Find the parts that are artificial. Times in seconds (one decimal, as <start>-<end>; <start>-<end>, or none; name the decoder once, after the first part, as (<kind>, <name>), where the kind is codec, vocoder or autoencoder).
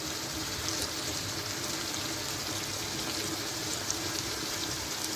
0.0-0.4 (vocoder, BigVGAN v2); 3.5-5.2